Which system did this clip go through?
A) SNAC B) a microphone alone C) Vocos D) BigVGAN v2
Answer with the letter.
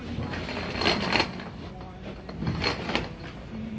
D